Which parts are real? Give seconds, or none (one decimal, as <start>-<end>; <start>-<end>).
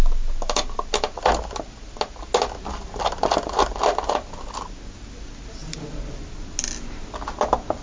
0.0-7.8